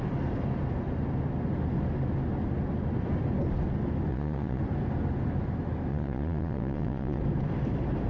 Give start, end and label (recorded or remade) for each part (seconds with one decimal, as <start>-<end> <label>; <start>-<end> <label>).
0.0-4.1 recorded; 4.1-4.6 remade; 4.6-5.9 recorded; 5.9-7.2 remade; 7.2-8.1 recorded